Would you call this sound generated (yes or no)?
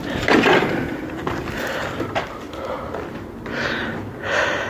no